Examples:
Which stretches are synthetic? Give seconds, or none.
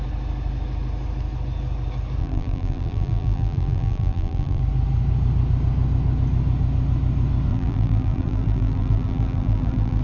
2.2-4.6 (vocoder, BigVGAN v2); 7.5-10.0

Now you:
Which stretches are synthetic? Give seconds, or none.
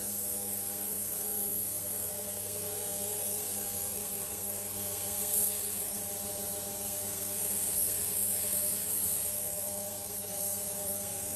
0.0-6.0 (codec, SNAC); 6.7-11.4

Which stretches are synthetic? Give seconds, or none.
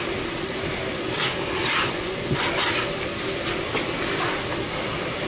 1.8-2.4 (vocoder, Vocos)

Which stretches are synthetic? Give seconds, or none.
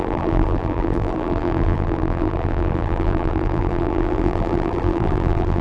0.0-5.6 (vocoder, BigVGAN v2)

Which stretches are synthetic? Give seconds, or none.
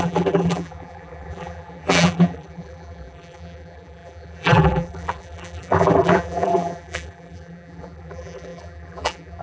0.0-9.4 (vocoder, BigVGAN v2)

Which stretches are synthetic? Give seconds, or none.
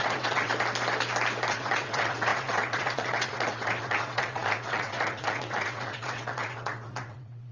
0.0-0.5 (vocoder, WaveNeXt); 1.5-7.5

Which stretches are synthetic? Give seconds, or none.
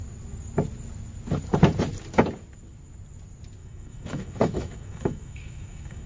3.6-6.1 (autoencoder, DAC-VAE)